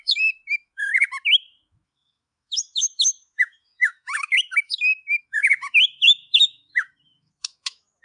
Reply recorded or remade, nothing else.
remade